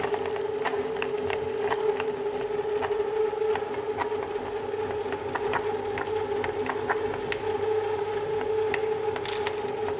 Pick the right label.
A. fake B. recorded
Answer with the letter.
B